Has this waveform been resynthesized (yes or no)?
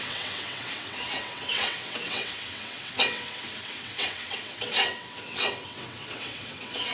yes